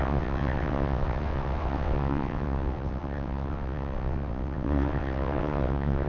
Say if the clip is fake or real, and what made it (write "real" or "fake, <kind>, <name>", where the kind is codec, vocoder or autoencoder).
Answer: fake, vocoder, WaveNeXt